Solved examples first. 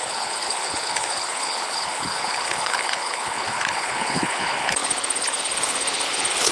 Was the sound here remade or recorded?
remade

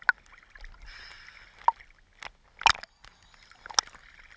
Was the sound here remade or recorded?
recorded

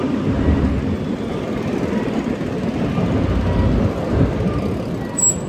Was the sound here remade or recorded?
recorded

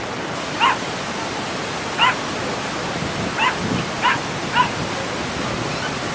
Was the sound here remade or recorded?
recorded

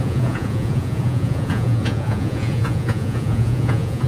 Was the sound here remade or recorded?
remade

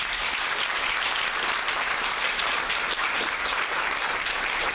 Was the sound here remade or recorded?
recorded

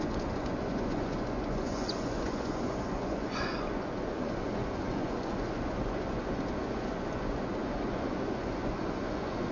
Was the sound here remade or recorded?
remade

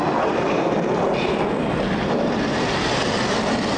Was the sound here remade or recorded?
recorded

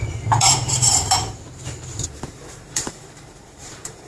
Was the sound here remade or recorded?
remade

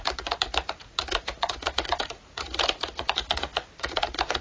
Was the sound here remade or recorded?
remade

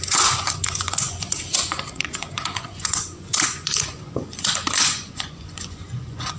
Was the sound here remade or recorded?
remade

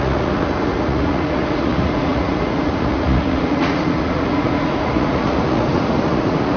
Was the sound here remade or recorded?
remade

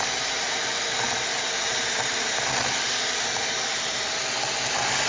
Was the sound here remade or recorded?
recorded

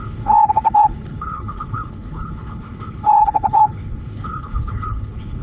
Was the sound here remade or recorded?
remade